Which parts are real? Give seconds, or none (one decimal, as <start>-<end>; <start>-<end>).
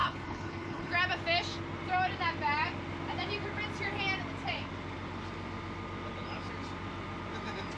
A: 0.9-7.8